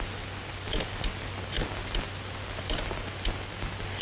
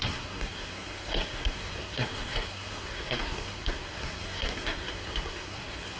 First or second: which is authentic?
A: first